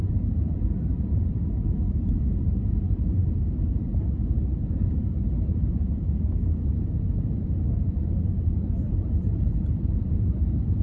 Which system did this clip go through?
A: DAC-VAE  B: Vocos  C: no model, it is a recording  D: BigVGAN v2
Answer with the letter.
D